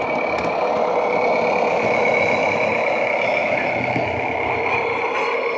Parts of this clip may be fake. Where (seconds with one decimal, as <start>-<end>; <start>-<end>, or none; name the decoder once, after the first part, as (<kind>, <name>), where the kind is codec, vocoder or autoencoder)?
1.7-4.6 (autoencoder, DAC-VAE)